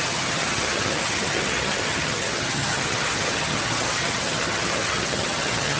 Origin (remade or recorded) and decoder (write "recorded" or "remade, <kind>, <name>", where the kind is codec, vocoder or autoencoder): remade, vocoder, HiFi-GAN